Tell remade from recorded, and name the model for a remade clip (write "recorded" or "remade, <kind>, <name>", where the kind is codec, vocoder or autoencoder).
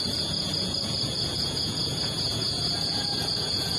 remade, vocoder, Vocos